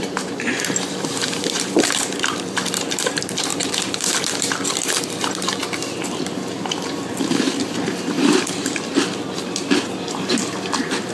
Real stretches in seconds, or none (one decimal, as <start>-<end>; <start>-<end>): 5.6-7.1